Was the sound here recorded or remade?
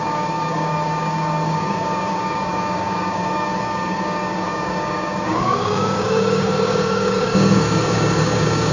remade